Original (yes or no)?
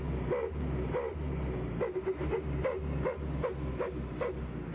yes